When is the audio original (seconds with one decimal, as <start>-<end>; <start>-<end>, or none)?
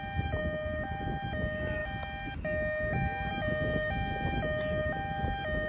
0.0-5.7